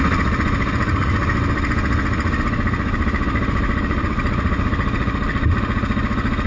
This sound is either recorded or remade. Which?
recorded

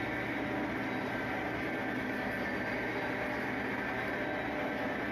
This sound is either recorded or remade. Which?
recorded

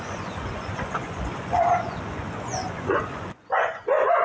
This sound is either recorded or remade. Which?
remade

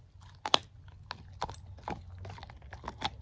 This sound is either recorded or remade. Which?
recorded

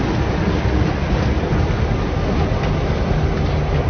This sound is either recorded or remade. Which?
recorded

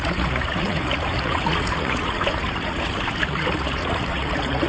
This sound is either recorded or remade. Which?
remade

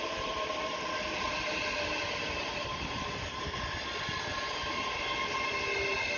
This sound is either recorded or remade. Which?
recorded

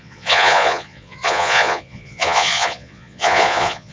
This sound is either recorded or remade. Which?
remade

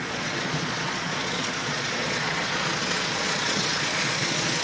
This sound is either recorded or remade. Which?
remade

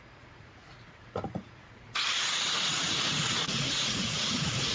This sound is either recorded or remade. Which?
remade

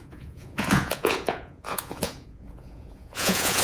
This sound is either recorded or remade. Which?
remade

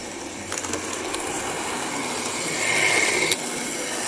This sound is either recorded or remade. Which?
recorded